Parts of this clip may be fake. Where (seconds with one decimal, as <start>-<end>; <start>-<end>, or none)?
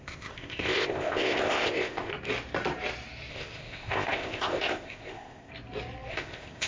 0.0-2.1; 3.3-5.5; 6.1-6.7